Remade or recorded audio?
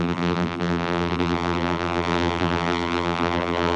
remade